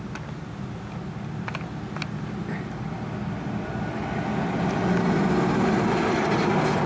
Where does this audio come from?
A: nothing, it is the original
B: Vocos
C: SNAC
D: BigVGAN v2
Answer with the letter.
A